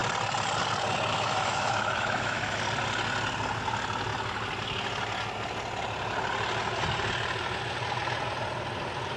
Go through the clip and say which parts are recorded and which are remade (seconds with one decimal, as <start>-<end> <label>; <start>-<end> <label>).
0.0-1.1 recorded; 1.1-2.6 remade; 2.6-9.2 recorded